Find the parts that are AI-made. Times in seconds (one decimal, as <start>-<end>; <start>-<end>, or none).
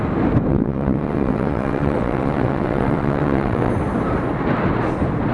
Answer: 0.5-3.7